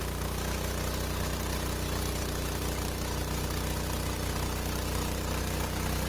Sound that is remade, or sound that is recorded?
recorded